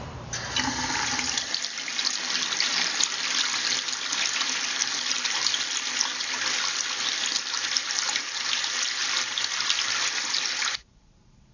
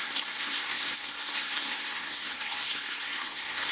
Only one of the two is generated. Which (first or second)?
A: second